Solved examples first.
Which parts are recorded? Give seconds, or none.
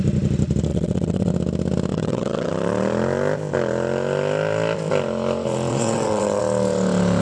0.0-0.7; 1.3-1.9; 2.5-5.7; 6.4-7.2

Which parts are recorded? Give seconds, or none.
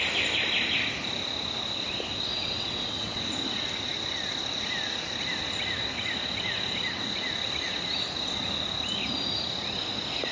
0.0-2.3; 3.2-10.3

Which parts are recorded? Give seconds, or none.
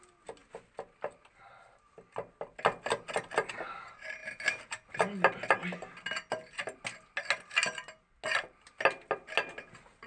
0.0-10.1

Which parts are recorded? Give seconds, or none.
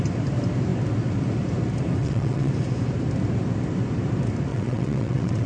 0.0-2.0; 2.5-4.5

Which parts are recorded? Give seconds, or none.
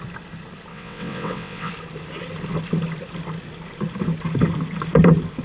0.0-0.7; 1.7-5.4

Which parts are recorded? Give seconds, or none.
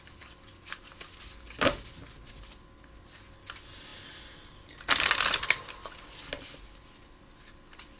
0.0-8.0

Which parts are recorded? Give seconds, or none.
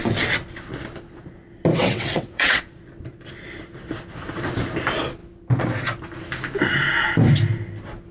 0.0-1.7; 2.6-8.1